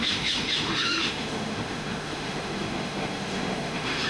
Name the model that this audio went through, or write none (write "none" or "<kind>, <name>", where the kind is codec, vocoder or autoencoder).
autoencoder, DAC-VAE